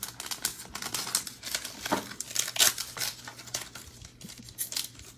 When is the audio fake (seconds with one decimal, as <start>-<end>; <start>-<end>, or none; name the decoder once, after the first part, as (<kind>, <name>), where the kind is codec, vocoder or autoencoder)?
none